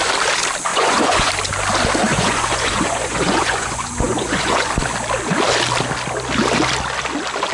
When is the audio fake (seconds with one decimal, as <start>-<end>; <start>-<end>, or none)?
0.7-1.3; 2.1-4.7